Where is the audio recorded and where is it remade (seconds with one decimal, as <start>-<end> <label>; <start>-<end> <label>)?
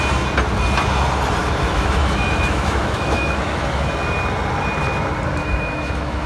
0.0-1.4 recorded; 1.4-3.9 remade; 3.9-5.4 recorded; 5.4-6.3 remade